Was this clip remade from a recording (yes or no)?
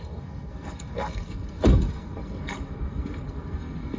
yes